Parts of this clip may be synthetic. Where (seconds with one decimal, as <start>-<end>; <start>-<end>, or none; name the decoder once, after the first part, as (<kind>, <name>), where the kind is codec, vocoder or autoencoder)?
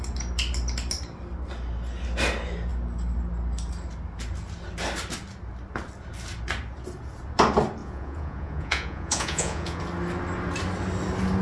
7.8-9.8 (vocoder, Vocos)